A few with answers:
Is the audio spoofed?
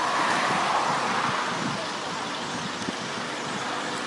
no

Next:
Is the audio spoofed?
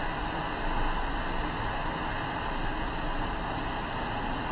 no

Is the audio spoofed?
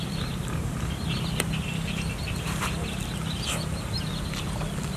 no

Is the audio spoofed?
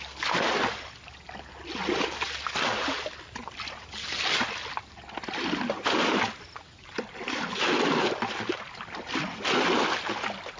no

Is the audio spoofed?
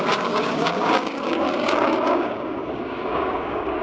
yes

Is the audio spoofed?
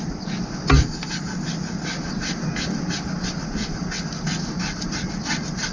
no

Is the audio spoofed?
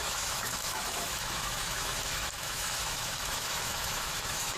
yes